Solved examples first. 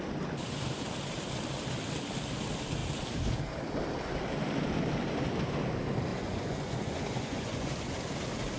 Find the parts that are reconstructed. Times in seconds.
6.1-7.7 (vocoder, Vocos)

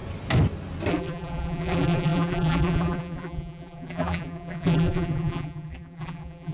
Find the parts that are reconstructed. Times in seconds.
0.9-6.5 (vocoder, BigVGAN v2)